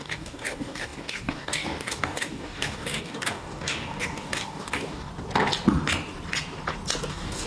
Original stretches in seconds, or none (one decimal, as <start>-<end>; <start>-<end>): 5.1-7.1